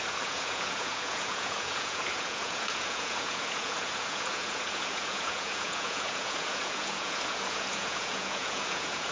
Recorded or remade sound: remade